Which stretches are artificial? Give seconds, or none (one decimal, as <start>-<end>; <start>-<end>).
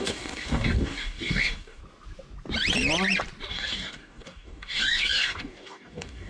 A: 0.0-1.8; 3.5-6.3